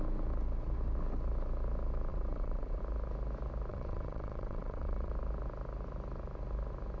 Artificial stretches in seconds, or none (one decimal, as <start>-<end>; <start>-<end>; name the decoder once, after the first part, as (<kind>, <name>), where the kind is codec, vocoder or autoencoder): 2.1-2.8 (vocoder, WaveNeXt); 3.7-5.1